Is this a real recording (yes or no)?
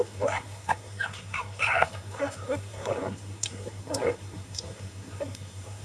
no